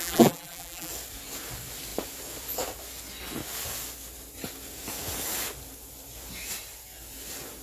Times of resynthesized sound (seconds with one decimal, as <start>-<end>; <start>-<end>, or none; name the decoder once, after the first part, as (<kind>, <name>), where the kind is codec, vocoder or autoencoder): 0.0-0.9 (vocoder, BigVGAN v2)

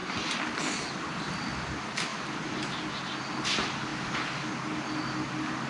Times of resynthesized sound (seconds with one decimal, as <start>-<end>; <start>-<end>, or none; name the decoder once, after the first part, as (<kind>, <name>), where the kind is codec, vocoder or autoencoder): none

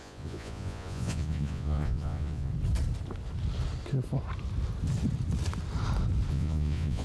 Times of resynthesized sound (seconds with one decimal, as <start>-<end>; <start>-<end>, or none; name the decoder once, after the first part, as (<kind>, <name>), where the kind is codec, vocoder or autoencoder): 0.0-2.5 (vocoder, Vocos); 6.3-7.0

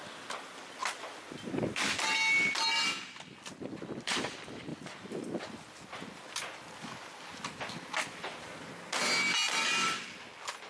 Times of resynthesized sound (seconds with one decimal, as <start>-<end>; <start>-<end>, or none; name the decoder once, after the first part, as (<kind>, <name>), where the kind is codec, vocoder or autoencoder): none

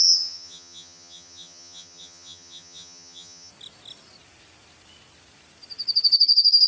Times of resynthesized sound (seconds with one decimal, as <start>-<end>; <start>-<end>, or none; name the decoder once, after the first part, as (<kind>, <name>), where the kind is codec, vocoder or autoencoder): 0.0-3.5 (vocoder, HiFi-GAN)